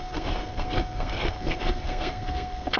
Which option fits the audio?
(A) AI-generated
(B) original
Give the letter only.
A